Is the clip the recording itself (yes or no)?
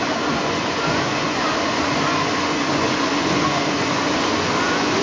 no